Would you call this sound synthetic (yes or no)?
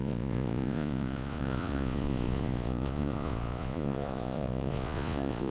yes